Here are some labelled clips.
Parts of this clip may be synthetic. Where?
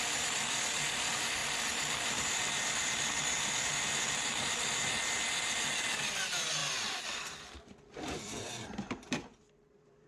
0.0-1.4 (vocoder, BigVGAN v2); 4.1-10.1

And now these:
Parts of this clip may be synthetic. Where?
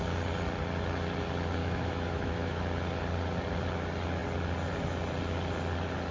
1.6-2.6 (autoencoder, DAC-VAE)